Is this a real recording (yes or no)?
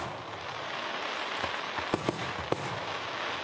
yes